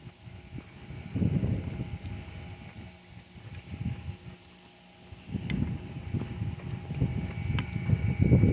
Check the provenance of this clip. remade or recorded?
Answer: recorded